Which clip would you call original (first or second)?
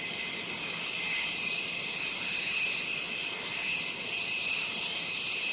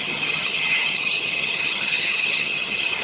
first